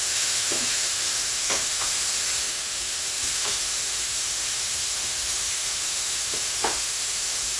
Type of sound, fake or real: fake